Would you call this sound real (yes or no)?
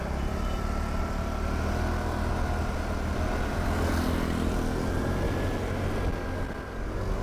yes